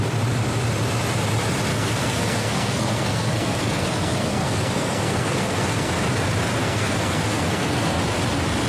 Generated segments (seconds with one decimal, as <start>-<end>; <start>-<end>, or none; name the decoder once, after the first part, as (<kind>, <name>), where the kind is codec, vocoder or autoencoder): 1.7-5.9 (codec, SNAC); 6.6-8.0